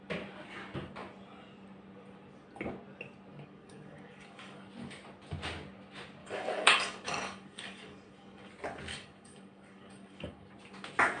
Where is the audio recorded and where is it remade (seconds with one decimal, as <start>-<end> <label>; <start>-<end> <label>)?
0.0-3.3 recorded; 3.3-4.7 remade; 4.7-6.2 recorded; 6.2-8.5 remade; 8.5-8.9 recorded; 8.9-10.5 remade; 10.5-11.2 recorded